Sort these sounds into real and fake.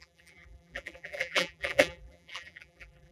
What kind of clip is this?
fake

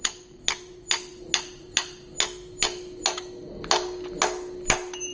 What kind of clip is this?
real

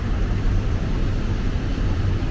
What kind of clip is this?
fake